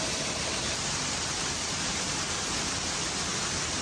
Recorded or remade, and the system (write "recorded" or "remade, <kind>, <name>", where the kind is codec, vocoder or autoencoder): recorded